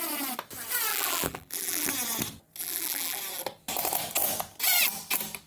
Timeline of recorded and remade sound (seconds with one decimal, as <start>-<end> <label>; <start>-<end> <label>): 0.0-0.9 recorded; 0.9-1.9 remade; 1.9-2.6 recorded; 2.6-3.2 remade; 3.2-5.5 recorded